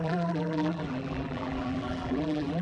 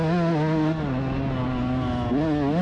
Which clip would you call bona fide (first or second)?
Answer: second